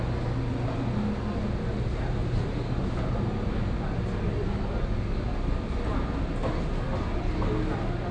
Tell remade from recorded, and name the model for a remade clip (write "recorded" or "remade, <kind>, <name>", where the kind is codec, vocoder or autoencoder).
recorded